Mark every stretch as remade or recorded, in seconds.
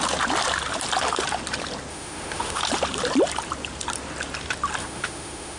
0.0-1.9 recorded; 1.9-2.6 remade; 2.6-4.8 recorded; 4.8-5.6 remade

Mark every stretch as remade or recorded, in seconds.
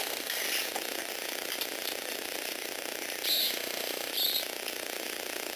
0.0-0.4 remade; 0.4-3.3 recorded; 3.3-4.1 remade; 4.1-5.6 recorded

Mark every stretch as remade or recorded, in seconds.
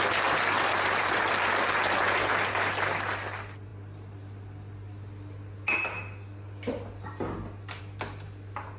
0.0-8.8 recorded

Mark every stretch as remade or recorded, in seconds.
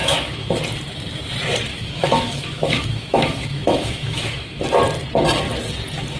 0.0-0.5 remade; 0.5-1.7 recorded; 1.7-4.6 remade; 4.6-6.2 recorded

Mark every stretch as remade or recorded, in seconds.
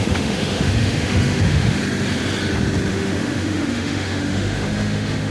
0.0-1.8 remade; 1.8-2.9 recorded; 2.9-5.3 remade